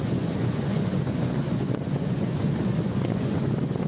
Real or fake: fake